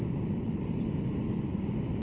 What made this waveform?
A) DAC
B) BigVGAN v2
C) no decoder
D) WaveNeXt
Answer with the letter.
C